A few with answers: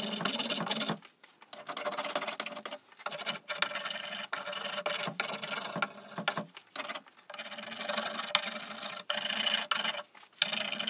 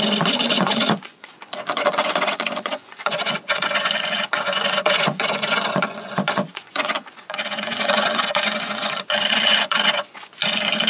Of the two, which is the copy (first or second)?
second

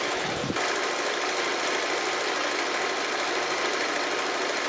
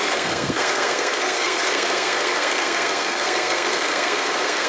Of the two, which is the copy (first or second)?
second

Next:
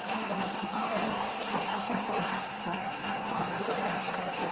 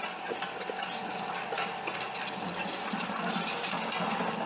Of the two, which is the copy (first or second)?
first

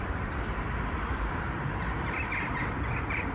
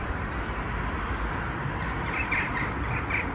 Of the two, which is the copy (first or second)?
first